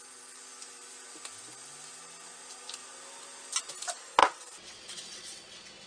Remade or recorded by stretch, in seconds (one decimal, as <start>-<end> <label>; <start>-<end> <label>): 0.0-4.2 recorded; 4.2-5.9 remade